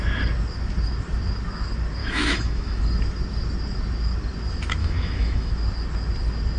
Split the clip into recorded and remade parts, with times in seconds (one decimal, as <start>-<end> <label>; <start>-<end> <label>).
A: 0.0-2.0 recorded; 2.0-2.8 remade; 2.8-4.8 recorded; 4.8-5.5 remade; 5.5-6.6 recorded